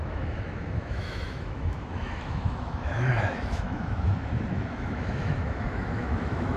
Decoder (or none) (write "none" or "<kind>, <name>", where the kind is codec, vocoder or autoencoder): autoencoder, DAC-VAE